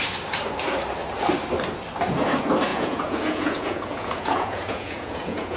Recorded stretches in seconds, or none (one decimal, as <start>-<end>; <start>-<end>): 0.0-2.7